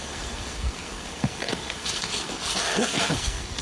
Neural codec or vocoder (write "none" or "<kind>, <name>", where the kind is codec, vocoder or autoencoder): codec, SNAC